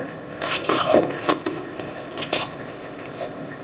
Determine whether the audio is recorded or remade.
remade